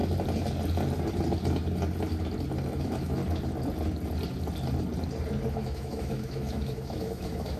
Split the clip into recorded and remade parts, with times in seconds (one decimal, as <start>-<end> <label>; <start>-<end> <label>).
0.0-2.8 recorded; 2.8-3.2 remade; 3.2-5.5 recorded; 5.5-7.6 remade